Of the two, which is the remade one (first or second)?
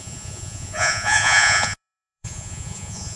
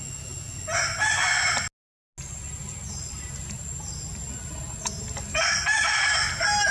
first